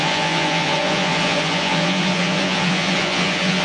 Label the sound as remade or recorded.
remade